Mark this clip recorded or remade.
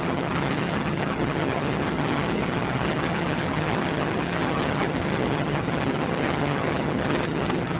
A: remade